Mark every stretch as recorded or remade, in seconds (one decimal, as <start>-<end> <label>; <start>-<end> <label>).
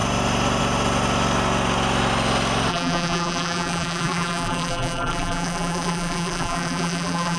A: 0.0-2.7 recorded; 2.7-7.4 remade